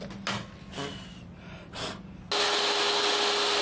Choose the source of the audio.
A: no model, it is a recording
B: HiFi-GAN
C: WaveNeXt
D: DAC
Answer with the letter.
A